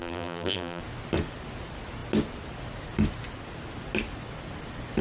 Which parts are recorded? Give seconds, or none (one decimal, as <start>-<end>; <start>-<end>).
0.8-5.0